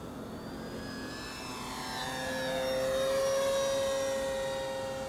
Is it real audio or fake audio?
real